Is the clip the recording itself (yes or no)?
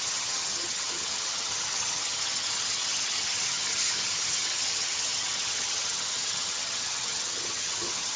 no